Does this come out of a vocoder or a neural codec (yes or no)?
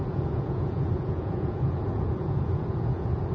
yes